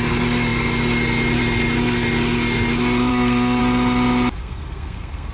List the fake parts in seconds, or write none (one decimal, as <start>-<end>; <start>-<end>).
3.1-3.6; 4.4-5.3